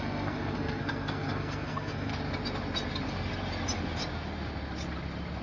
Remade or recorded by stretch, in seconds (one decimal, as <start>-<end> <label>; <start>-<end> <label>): 0.0-2.1 remade; 2.1-5.4 recorded